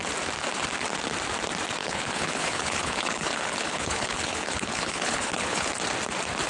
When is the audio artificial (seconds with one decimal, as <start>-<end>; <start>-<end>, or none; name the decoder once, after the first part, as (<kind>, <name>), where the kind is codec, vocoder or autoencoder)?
1.8-5.7 (codec, HILCodec)